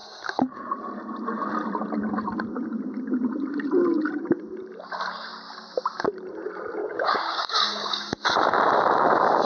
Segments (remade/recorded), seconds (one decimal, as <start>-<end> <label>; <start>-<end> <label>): 0.0-0.7 remade; 0.7-6.8 recorded; 6.8-8.1 remade; 8.1-9.4 recorded